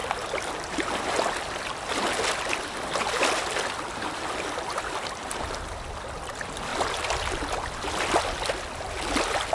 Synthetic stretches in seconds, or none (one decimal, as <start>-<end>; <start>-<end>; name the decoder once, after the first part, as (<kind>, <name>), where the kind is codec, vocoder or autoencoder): none